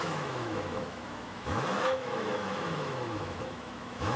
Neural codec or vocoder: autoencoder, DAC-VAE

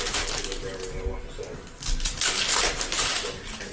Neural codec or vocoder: none